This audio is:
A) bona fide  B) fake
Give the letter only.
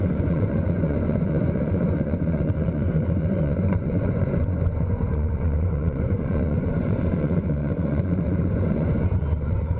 B